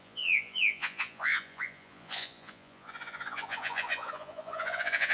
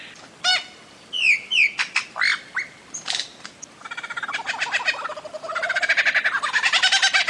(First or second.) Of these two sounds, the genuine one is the second